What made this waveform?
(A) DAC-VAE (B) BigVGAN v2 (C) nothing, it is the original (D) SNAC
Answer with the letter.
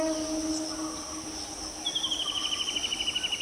C